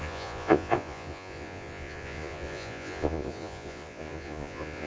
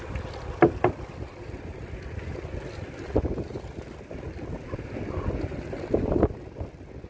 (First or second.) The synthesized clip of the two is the first